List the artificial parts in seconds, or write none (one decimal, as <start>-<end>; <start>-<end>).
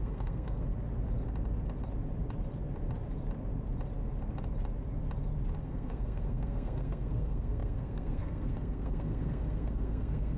0.0-0.7; 5.6-10.4